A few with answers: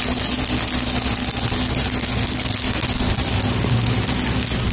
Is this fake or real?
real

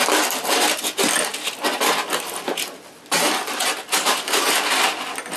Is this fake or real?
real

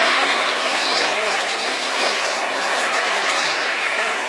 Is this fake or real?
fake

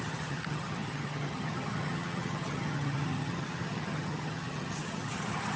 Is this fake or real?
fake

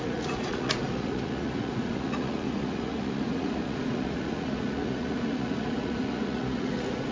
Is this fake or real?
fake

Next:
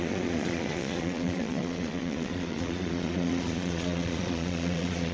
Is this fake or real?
fake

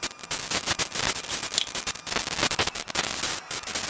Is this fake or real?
real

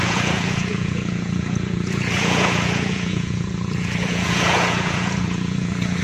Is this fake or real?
fake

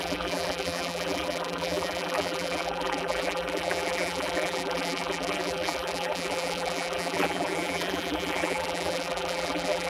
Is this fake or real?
fake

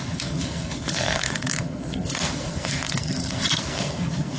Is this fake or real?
fake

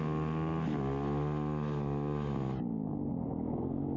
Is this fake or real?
real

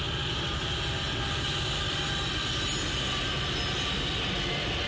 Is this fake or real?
real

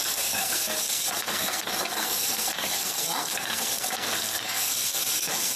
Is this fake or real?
fake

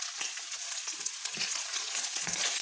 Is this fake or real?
fake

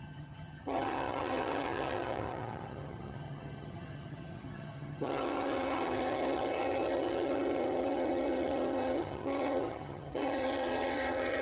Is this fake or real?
fake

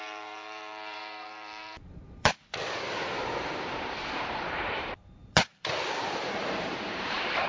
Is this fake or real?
fake